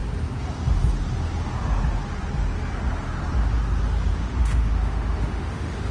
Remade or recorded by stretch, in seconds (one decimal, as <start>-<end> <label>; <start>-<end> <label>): 0.0-4.1 recorded; 4.1-5.9 remade